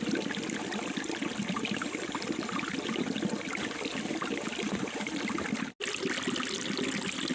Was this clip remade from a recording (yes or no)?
no